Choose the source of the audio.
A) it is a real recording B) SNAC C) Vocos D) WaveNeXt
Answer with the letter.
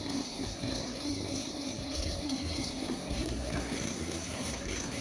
B